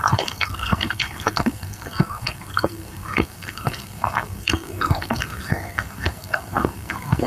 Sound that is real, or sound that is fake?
fake